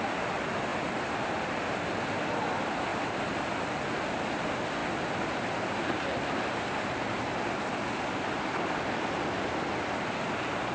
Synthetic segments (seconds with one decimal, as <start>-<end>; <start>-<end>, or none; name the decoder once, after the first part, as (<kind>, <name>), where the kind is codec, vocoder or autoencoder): 2.9-3.5 (vocoder, BigVGAN v2)